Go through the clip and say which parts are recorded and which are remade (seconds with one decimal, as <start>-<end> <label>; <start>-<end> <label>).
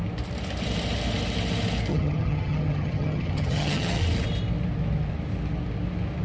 0.0-1.9 recorded; 1.9-4.0 remade; 4.0-6.2 recorded